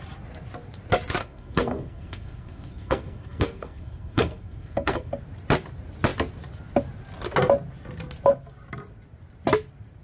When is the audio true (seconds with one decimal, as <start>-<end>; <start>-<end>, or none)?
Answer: 0.0-1.2; 5.1-10.0